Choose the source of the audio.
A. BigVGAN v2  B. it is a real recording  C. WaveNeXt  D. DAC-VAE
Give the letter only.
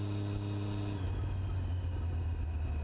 B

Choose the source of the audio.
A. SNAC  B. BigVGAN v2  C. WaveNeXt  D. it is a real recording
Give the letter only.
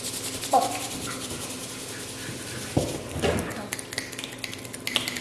D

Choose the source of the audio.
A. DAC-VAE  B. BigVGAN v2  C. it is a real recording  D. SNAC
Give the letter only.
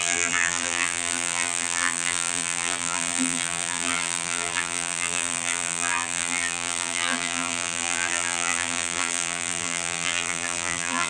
B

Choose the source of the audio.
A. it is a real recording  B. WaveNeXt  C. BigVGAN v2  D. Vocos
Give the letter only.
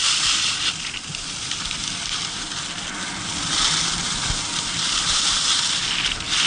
A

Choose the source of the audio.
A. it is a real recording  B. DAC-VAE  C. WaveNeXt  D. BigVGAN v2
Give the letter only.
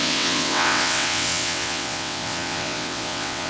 C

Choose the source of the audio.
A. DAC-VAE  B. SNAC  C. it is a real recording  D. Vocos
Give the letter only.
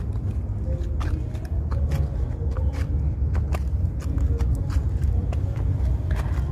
C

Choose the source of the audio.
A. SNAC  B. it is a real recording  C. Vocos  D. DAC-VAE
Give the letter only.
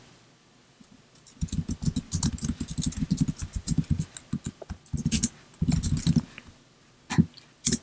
B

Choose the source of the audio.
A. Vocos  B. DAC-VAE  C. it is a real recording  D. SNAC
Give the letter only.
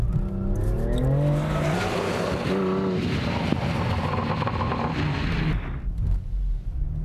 C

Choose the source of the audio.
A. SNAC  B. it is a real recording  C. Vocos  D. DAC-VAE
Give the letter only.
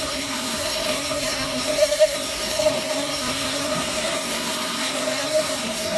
A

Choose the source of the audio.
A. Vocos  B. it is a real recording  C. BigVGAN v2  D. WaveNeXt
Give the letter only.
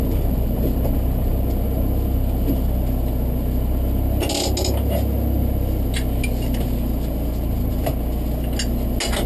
B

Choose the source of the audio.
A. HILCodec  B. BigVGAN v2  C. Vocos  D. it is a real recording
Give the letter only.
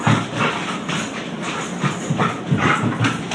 D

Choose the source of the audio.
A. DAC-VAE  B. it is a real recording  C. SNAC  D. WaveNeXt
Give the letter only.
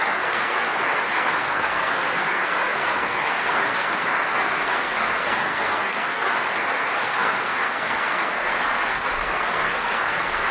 C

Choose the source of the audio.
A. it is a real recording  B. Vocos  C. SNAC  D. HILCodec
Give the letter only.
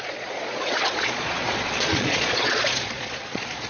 B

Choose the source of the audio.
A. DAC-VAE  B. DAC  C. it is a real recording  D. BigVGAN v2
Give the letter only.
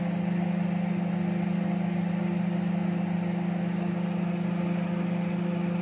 C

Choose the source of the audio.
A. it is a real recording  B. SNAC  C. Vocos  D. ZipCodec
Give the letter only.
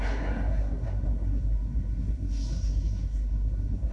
B